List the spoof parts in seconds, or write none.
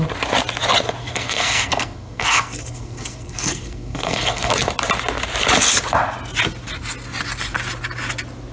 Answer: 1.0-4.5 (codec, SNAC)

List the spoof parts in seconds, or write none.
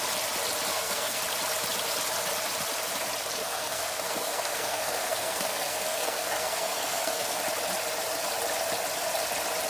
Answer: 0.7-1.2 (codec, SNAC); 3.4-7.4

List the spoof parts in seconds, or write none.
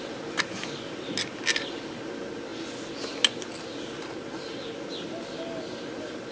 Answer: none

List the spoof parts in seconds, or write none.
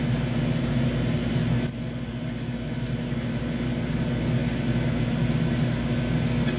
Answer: none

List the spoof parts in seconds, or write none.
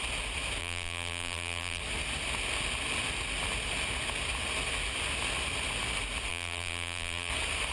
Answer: 0.6-1.8 (vocoder, BigVGAN v2); 6.3-7.3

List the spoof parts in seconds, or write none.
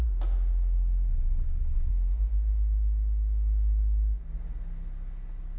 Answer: 1.1-1.9 (vocoder, BigVGAN v2)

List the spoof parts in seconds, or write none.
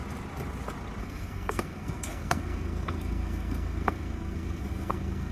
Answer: 1.0-5.3 (codec, SNAC)